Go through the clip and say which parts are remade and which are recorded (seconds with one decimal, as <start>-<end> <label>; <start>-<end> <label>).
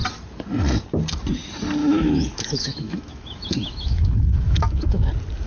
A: 0.0-1.8 recorded; 1.8-5.1 remade; 5.1-5.5 recorded